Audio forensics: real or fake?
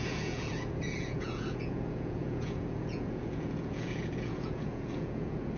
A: fake